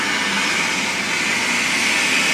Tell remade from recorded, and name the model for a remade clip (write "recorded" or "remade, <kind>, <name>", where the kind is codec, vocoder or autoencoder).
recorded